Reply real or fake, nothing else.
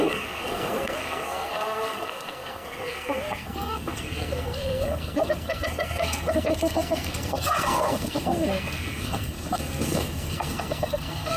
fake